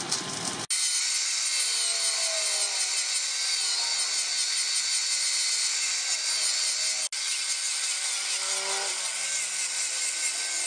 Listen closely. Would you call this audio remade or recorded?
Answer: recorded